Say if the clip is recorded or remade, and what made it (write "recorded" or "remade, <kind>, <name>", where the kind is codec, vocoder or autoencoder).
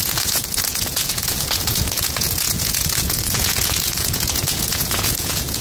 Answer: remade, vocoder, Vocos